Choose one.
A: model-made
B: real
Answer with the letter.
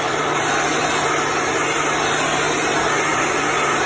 B